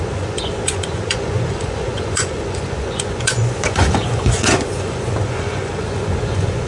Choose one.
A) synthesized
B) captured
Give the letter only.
A